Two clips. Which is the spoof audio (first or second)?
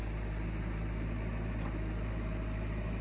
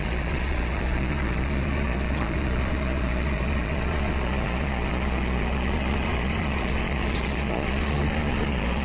second